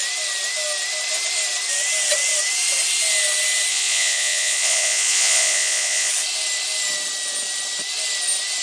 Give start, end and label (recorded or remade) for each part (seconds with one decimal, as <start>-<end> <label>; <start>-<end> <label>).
0.0-3.7 recorded; 3.7-6.1 remade; 6.1-8.6 recorded